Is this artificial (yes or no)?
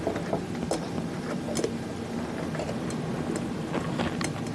no